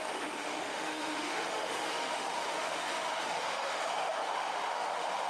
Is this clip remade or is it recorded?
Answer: remade